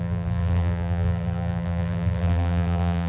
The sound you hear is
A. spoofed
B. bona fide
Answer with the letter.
A